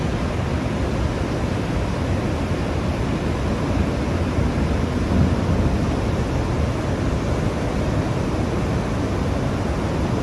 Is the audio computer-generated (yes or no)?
no